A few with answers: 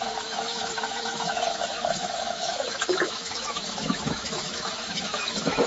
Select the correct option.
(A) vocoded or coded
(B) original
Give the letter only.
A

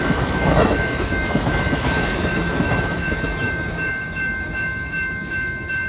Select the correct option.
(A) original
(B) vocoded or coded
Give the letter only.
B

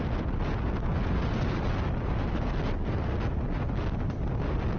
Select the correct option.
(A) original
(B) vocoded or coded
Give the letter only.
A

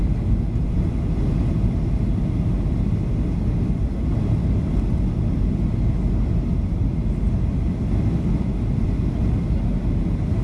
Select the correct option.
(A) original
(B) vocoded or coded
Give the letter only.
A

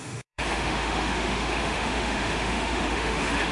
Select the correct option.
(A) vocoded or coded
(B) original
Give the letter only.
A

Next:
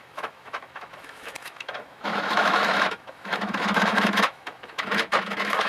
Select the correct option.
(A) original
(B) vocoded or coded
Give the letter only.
B